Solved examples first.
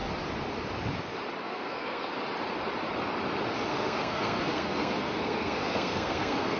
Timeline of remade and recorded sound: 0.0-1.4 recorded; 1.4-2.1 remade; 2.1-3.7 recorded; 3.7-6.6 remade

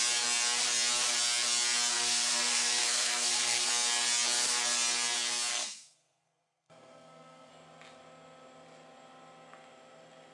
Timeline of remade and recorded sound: 0.0-1.9 recorded; 1.9-3.7 remade; 3.7-5.5 recorded; 5.5-7.5 remade; 7.5-10.3 recorded

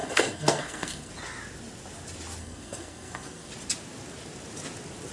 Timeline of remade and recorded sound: 0.0-1.1 remade; 1.1-2.4 recorded; 2.4-3.5 remade; 3.5-5.1 recorded

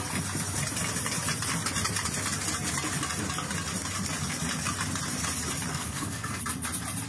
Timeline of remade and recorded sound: 0.0-5.7 recorded; 5.7-6.4 remade; 6.4-7.1 recorded

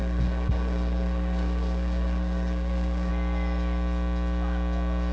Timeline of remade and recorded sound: 0.0-3.1 remade; 3.1-5.1 recorded